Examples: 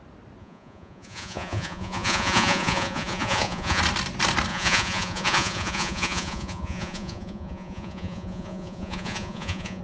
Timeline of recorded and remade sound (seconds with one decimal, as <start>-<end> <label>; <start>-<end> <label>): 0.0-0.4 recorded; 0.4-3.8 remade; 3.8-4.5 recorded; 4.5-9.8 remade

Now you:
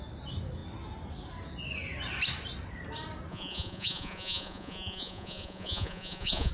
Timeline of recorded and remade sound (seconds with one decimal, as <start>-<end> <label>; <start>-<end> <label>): 0.0-3.3 recorded; 3.3-6.5 remade

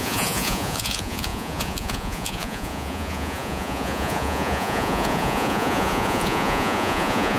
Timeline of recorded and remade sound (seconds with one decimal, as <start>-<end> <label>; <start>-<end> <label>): 0.0-7.4 remade

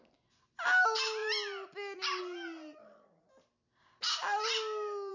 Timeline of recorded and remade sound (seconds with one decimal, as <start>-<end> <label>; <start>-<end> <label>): 0.0-5.1 recorded

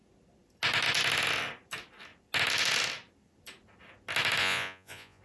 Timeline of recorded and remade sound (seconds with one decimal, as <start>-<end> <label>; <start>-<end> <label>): 0.0-4.4 recorded; 4.4-5.2 remade